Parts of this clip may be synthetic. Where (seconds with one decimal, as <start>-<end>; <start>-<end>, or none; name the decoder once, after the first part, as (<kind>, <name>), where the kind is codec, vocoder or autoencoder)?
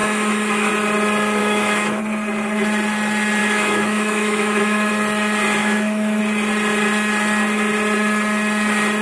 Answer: 0.0-0.7 (autoencoder, DAC-VAE); 1.4-2.0; 3.4-4.9; 5.6-6.2